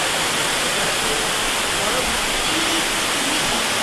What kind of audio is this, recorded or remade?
recorded